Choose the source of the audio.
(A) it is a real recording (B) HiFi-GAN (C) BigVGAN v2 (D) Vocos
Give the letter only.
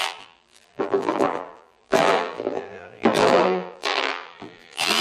C